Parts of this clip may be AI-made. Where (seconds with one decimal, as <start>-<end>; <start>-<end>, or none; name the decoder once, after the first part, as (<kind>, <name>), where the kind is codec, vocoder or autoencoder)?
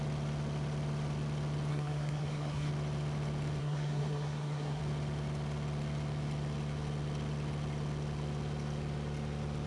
1.7-2.7 (codec, SNAC); 3.6-4.8